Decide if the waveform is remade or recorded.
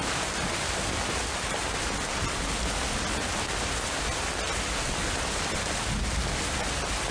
recorded